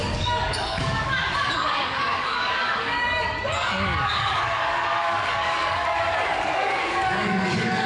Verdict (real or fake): fake